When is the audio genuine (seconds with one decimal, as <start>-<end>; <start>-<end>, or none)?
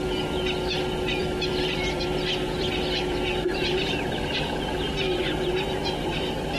0.0-1.2; 5.2-6.6